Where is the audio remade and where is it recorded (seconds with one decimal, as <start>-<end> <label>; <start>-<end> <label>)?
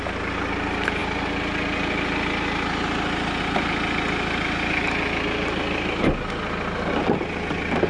0.0-7.9 recorded